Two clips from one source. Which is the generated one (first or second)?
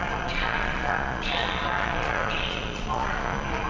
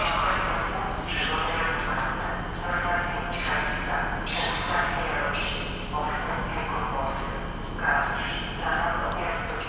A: first